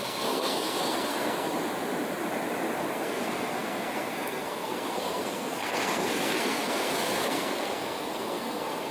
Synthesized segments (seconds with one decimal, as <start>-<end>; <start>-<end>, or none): 0.0-1.5; 2.9-8.9